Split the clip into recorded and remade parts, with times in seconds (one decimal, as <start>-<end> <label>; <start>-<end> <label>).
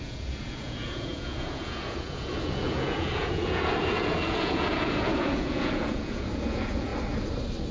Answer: 0.0-6.9 remade; 6.9-7.7 recorded